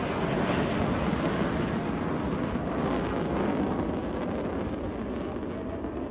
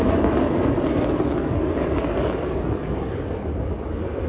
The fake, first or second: second